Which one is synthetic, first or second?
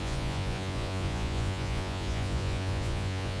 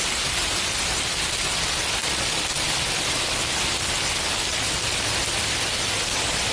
first